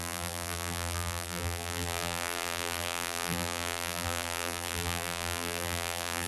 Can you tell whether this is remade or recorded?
remade